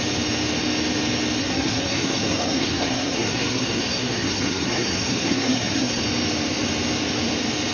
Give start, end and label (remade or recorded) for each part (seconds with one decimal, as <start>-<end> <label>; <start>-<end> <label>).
0.0-1.4 recorded; 1.4-6.0 remade; 6.0-7.7 recorded